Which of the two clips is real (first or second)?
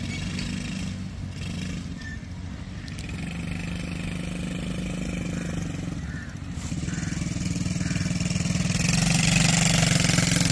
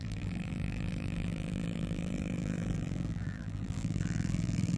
first